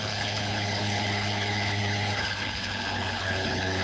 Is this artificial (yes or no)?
yes